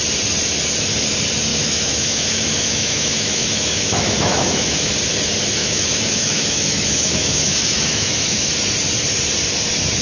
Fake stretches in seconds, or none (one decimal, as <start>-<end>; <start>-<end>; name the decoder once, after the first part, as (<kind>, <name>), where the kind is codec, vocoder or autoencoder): 1.5-4.9 (autoencoder, DAC-VAE); 5.6-8.5